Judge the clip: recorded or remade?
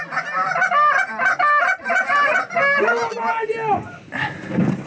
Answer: recorded